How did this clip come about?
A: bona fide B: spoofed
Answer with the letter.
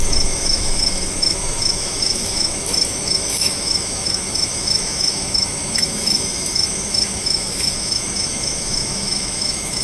B